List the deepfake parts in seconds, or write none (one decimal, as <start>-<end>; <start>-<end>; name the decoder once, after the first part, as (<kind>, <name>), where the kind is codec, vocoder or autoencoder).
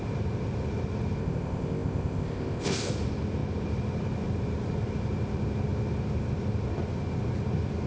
1.2-2.9 (codec, ZipCodec)